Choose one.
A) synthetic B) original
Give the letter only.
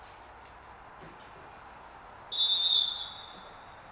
B